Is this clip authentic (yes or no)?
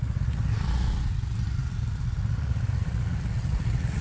no